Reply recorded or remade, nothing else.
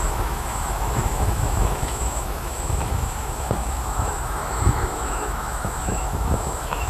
remade